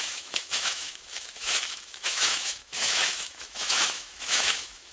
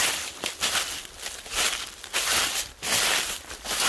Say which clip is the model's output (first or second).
first